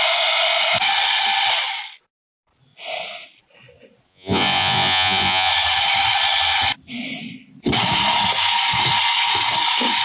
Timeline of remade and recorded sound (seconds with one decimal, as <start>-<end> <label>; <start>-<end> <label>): 0.0-4.1 recorded; 4.1-5.5 remade; 5.5-10.0 recorded